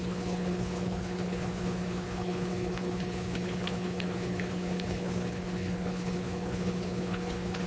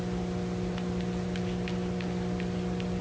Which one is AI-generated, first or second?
first